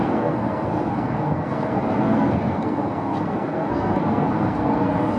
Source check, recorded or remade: remade